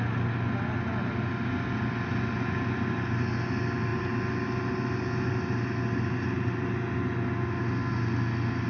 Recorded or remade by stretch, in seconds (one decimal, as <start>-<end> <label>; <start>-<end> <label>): 0.0-8.7 recorded